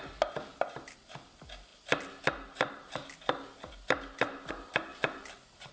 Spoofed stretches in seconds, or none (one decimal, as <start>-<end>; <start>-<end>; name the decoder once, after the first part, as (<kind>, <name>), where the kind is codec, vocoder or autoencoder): none